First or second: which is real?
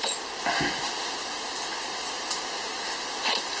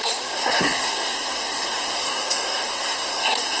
first